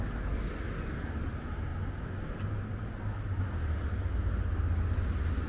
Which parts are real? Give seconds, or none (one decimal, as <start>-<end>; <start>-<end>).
0.0-5.5